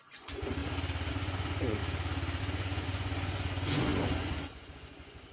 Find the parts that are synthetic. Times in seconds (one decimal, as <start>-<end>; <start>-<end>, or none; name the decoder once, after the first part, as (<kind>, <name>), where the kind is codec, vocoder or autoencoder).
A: 0.0-0.6 (vocoder, Vocos); 1.1-1.8; 2.4-5.3